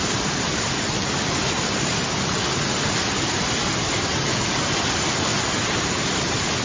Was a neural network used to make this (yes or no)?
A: no